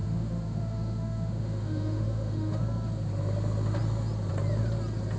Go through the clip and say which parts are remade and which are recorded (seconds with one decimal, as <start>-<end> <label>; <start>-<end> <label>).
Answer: 0.0-2.6 remade; 2.6-5.2 recorded